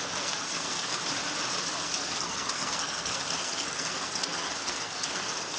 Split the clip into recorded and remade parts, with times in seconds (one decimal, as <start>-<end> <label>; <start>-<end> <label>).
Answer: 0.0-1.0 remade; 1.0-1.7 recorded; 1.7-5.6 remade